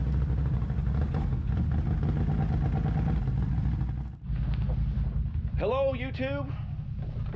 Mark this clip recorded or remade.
recorded